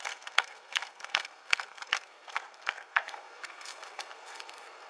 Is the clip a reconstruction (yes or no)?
yes